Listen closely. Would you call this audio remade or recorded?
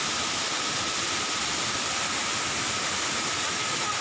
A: recorded